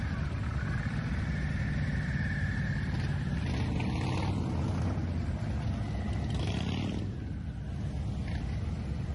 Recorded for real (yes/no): yes